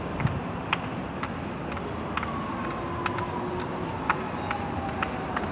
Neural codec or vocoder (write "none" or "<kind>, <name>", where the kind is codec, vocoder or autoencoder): none